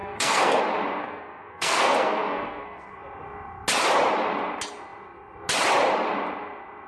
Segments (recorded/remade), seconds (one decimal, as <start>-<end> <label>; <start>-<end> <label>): 0.0-0.6 remade; 0.6-1.0 recorded; 1.0-3.0 remade; 3.0-6.9 recorded